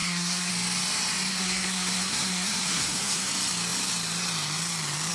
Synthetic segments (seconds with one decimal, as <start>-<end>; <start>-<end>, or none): 0.0-0.5; 1.3-3.3